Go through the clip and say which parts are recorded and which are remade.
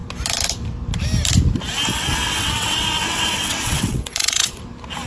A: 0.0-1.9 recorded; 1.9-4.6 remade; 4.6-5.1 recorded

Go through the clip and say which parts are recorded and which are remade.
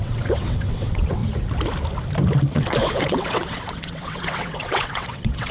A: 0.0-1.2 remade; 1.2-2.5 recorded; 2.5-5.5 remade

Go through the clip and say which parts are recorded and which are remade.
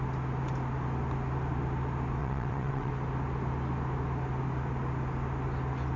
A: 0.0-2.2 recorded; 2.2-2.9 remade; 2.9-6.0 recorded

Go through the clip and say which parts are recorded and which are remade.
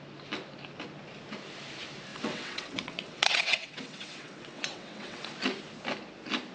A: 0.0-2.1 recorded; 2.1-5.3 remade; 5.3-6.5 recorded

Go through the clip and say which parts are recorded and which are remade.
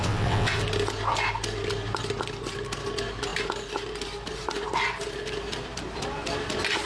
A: 0.0-0.6 remade; 0.6-6.9 recorded